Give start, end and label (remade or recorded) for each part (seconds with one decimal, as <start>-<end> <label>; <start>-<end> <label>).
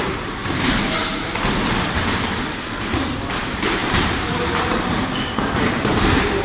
0.0-0.4 recorded; 0.4-1.3 remade; 1.3-3.8 recorded; 3.8-4.6 remade; 4.6-6.4 recorded